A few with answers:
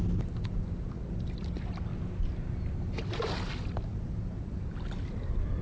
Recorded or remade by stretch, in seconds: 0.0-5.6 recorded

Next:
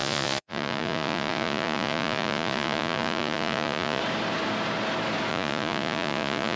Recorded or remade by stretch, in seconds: 0.0-4.0 remade; 4.0-5.3 recorded; 5.3-6.6 remade